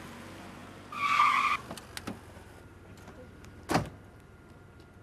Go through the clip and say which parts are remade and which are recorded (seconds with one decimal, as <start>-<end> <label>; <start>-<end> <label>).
0.0-5.0 recorded